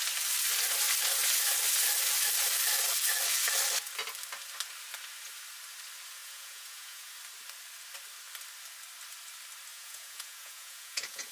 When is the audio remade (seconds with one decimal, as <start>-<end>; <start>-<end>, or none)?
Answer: 6.2-7.1; 9.7-11.3